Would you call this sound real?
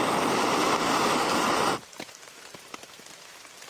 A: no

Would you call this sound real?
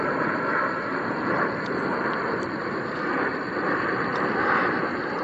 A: no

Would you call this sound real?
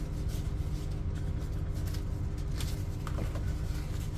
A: yes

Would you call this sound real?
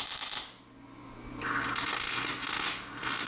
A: yes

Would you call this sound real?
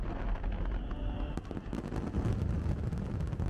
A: yes